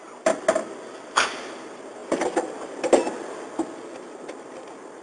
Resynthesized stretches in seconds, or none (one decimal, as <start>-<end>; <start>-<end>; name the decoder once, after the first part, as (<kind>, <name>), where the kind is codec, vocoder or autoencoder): none